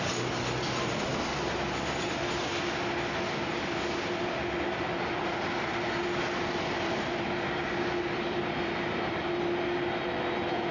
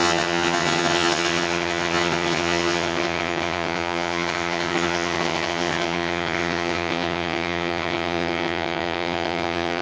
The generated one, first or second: second